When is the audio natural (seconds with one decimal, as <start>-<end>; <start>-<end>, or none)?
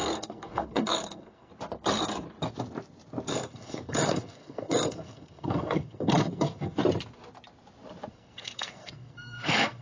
1.5-3.3; 6.8-8.1